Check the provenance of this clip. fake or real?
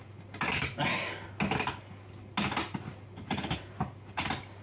real